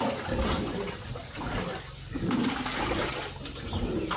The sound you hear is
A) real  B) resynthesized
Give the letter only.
A